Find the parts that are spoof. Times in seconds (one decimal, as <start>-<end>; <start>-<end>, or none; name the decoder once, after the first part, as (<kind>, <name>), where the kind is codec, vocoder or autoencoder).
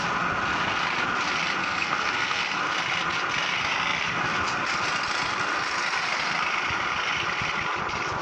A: 1.6-2.4 (codec, SNAC)